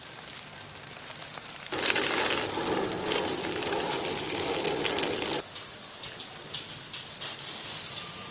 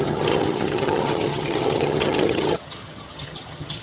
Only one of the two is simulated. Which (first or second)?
second